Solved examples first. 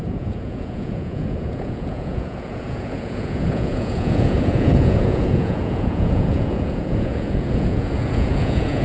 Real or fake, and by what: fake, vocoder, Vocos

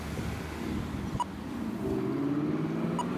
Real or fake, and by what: real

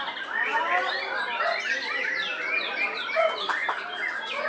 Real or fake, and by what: real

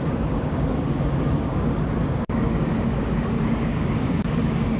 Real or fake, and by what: fake, codec, DAC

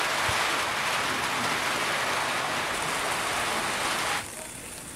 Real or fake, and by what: real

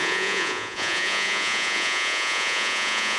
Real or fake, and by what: fake, vocoder, Vocos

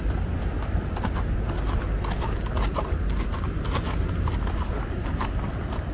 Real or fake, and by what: real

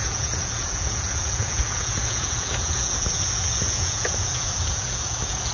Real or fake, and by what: fake, vocoder, Vocos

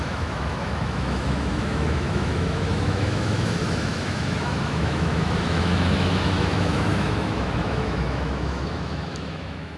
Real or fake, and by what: fake, autoencoder, DAC-VAE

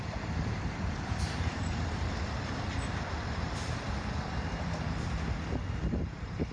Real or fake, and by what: fake, vocoder, BigVGAN v2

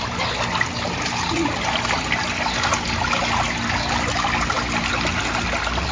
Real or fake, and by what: real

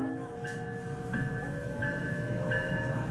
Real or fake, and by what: fake, autoencoder, DAC-VAE